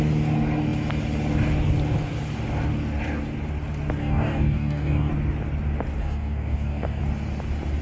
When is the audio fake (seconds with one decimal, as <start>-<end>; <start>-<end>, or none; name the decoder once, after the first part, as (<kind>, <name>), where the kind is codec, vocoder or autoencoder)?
4.0-5.1 (codec, DAC); 6.0-7.0